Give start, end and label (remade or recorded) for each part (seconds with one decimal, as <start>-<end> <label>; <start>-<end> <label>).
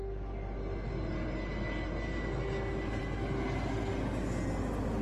0.0-5.0 recorded